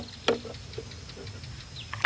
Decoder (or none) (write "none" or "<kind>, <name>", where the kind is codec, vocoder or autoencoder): none